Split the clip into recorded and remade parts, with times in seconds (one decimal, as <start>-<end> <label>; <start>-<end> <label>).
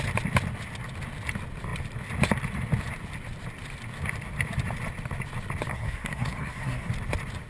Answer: 0.0-5.7 recorded; 5.7-6.9 remade; 6.9-7.5 recorded